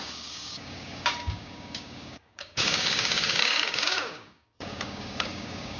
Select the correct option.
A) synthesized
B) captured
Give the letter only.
A